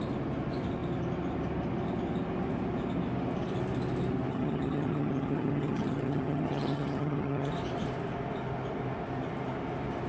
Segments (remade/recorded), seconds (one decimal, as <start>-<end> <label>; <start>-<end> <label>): 0.0-4.3 recorded; 4.3-7.5 remade; 7.5-10.1 recorded